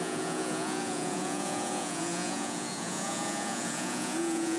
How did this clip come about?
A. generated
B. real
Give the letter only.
A